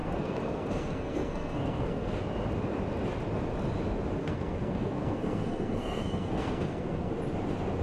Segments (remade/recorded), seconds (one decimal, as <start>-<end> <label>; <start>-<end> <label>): 0.0-2.2 remade; 2.2-4.2 recorded; 4.2-7.1 remade; 7.1-7.8 recorded